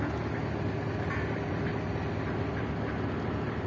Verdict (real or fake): real